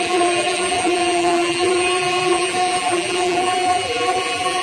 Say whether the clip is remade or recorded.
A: remade